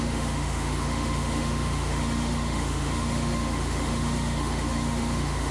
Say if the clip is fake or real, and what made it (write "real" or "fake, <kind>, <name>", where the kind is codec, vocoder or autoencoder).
fake, autoencoder, DAC-VAE